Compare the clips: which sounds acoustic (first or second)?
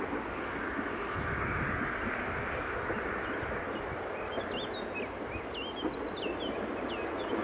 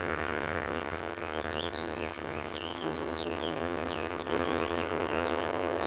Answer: first